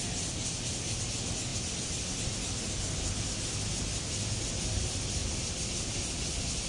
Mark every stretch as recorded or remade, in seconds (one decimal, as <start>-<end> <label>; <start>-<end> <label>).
0.0-6.7 recorded